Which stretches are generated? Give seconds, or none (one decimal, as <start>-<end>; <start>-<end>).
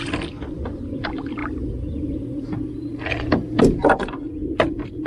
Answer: none